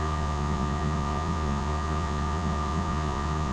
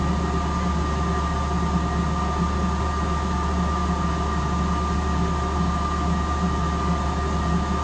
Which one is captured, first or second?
second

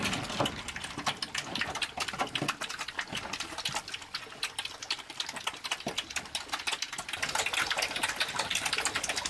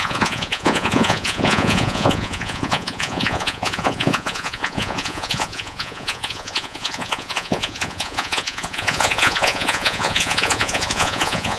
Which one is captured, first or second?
first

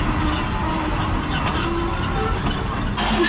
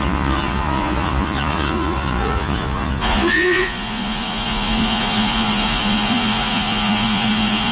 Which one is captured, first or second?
first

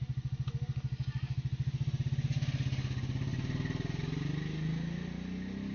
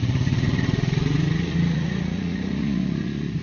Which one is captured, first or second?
first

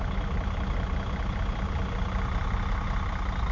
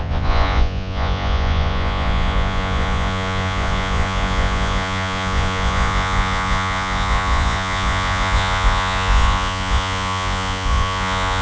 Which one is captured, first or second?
first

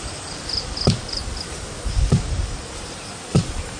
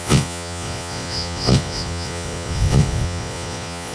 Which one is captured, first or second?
first